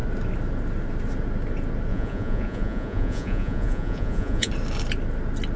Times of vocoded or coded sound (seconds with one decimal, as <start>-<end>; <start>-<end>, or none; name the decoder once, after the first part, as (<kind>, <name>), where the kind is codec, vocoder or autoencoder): 1.9-4.5 (vocoder, Vocos)